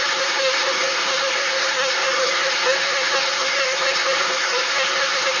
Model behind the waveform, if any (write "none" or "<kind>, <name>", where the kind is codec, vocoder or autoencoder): codec, SNAC